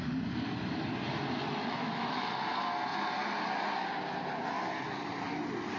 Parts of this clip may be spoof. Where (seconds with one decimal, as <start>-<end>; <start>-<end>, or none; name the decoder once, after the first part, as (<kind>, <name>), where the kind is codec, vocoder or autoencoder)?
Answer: 1.6-2.3 (autoencoder, DAC-VAE)